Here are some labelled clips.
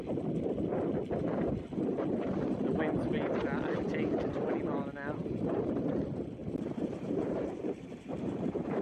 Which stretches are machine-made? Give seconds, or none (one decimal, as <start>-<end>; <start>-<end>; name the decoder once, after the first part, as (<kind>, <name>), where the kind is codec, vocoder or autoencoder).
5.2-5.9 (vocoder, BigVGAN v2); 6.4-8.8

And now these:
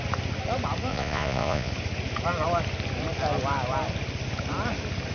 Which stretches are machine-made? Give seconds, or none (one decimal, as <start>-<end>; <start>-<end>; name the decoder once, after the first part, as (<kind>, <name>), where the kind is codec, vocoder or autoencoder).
0.9-1.7 (vocoder, Vocos)

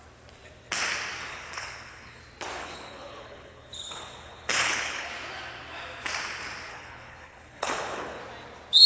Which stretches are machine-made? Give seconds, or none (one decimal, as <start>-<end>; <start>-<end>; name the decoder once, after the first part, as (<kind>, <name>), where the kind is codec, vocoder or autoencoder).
1.3-2.2 (codec, HILCodec); 2.6-5.1; 6.7-8.2

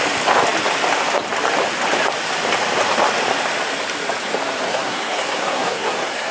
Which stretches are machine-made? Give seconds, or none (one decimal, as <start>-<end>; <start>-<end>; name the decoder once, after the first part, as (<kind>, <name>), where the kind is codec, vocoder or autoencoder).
4.7-6.3 (codec, SNAC)